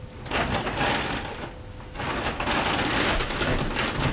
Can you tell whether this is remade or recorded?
recorded